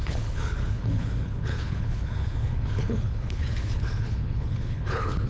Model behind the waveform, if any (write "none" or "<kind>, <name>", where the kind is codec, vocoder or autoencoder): codec, HILCodec